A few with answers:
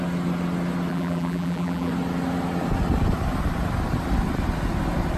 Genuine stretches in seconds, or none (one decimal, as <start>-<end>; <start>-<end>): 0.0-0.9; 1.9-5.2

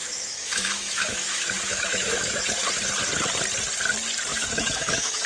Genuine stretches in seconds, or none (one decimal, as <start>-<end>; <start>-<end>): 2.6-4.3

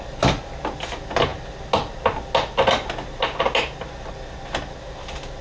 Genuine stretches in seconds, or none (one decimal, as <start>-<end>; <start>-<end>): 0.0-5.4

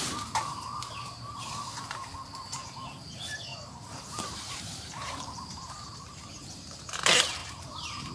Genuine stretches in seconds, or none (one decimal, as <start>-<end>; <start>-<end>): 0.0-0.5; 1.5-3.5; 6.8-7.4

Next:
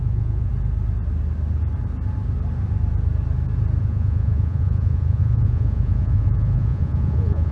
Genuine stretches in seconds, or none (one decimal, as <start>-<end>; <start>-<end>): 0.5-3.8

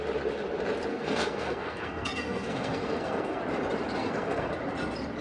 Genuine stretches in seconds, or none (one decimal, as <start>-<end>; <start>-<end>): 0.0-0.9; 3.4-4.0; 4.5-5.2